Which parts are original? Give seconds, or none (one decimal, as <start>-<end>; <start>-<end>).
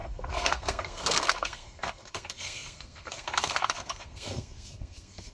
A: none